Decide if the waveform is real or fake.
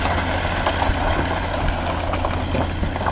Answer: real